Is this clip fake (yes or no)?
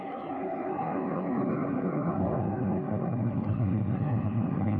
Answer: yes